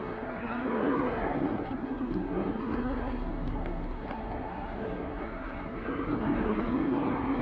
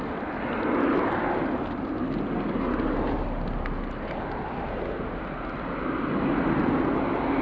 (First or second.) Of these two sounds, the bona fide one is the second